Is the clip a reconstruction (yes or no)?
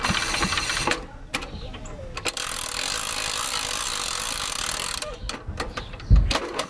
no